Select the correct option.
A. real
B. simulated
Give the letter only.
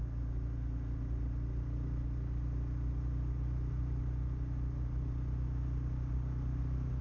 A